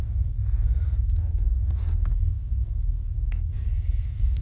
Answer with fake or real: fake